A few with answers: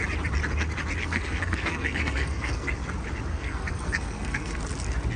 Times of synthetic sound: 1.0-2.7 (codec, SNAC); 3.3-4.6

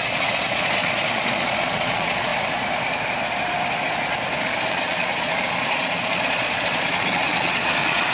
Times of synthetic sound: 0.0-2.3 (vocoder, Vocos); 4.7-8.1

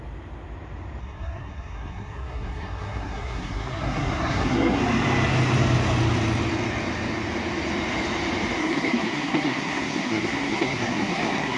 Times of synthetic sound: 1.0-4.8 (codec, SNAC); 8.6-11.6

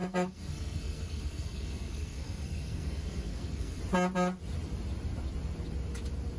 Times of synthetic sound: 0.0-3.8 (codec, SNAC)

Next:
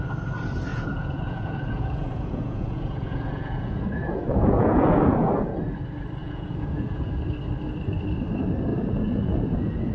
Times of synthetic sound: 0.7-5.3 (vocoder, Vocos); 6.2-7.1; 8.7-9.9

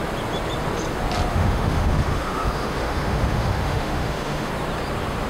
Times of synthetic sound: 1.3-4.5 (autoencoder, DAC-VAE)

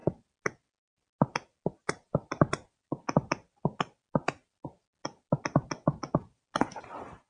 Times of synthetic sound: none